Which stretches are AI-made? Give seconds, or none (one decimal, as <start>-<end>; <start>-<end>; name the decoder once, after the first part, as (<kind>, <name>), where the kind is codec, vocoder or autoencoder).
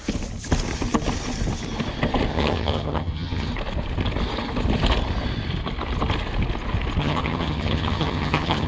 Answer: 2.3-3.5 (vocoder, HiFi-GAN); 7.0-8.7